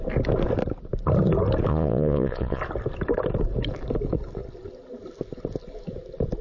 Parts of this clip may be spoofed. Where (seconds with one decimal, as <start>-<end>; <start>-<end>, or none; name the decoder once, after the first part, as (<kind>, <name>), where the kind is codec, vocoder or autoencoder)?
1.7-2.6 (vocoder, Vocos)

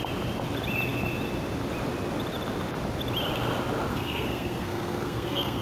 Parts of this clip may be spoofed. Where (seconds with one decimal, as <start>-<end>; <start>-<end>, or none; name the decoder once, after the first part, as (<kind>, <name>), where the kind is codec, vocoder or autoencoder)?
3.9-5.6 (codec, SNAC)

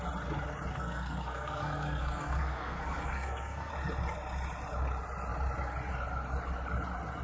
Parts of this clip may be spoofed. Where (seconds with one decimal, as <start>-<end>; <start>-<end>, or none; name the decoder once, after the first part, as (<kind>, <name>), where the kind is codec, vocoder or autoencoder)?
0.7-3.7 (codec, SNAC)

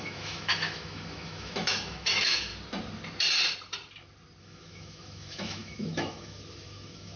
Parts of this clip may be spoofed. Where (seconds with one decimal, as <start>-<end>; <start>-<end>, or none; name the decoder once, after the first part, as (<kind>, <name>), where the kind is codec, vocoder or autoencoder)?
0.0-2.5 (autoencoder, DAC-VAE); 4.4-7.2

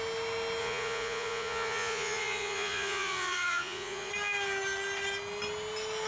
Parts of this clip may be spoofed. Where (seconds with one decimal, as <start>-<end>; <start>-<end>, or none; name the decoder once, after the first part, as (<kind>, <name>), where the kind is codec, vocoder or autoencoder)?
0.6-4.1 (vocoder, Vocos)

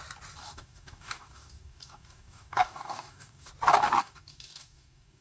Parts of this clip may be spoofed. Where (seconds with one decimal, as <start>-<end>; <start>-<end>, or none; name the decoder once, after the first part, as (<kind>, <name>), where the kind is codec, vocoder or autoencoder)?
0.4-3.5 (codec, DAC); 4.0-5.2

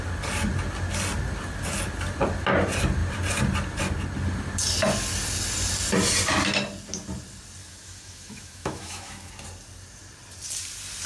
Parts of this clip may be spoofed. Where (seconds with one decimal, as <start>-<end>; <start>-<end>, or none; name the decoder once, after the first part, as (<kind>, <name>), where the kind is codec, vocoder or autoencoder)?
7.6-9.3 (autoencoder, DAC-VAE)

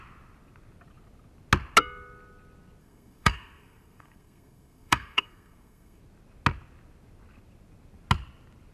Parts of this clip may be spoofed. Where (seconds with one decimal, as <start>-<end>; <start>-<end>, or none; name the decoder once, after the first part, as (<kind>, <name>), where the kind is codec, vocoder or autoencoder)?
2.8-6.0 (codec, SNAC)